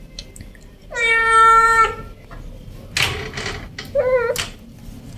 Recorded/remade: recorded